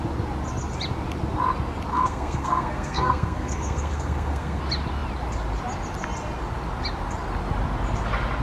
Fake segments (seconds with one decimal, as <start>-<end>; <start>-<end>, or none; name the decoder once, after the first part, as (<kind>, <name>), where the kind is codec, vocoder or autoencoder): 1.9-4.6 (codec, SNAC)